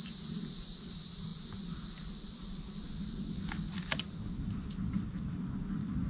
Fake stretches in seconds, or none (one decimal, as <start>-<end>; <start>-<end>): none